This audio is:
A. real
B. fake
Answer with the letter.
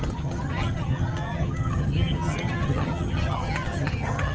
B